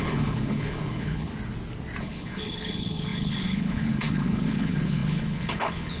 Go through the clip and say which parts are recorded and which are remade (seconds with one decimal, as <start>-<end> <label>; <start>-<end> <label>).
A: 0.0-1.3 remade; 1.3-2.0 recorded; 2.0-6.0 remade